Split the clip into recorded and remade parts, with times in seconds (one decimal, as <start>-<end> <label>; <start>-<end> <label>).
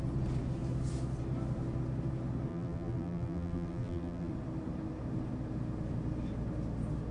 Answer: 0.0-2.5 recorded; 2.5-4.3 remade; 4.3-7.1 recorded